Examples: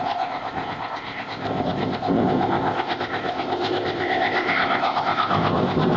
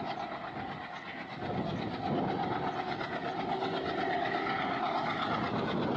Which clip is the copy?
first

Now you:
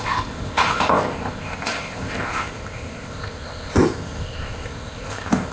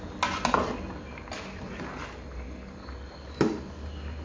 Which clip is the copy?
first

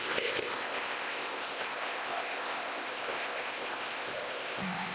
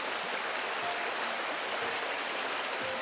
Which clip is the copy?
first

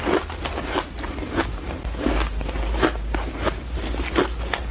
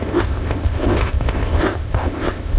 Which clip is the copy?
second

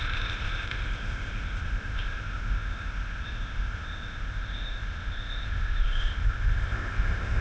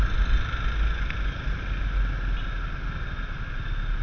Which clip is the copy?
first